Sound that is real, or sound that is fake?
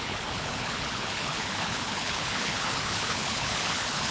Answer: fake